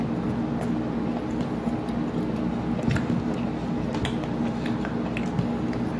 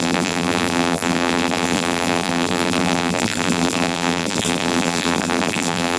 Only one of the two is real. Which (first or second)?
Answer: first